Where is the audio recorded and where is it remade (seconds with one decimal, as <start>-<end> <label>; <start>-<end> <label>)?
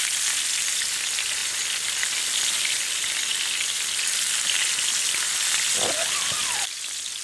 0.0-3.3 recorded; 3.3-3.8 remade; 3.8-7.2 recorded